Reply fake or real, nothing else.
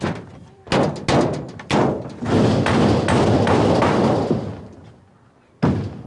real